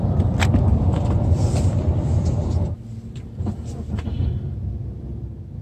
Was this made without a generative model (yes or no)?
yes